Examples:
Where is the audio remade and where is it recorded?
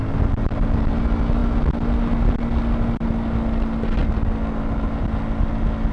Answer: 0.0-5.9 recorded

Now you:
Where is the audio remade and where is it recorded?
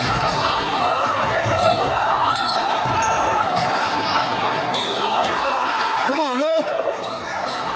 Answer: 0.0-2.9 remade; 2.9-3.4 recorded; 3.4-7.8 remade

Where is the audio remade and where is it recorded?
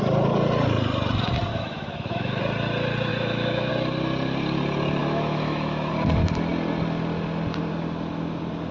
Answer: 0.0-1.5 recorded; 1.5-2.4 remade; 2.4-3.1 recorded; 3.1-3.7 remade; 3.7-5.0 recorded; 5.0-5.9 remade; 5.9-8.7 recorded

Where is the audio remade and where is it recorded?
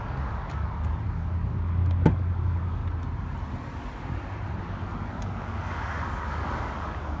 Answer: 0.0-2.8 remade; 2.8-4.6 recorded; 4.6-7.2 remade